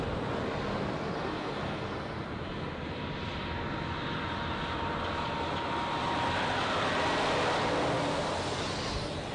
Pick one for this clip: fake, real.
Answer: real